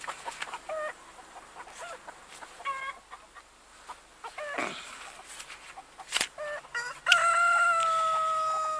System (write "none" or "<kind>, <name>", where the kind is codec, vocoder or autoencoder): none